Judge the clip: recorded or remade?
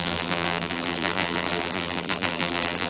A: remade